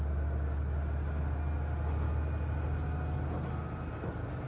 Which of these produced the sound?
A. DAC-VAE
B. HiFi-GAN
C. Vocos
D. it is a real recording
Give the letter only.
D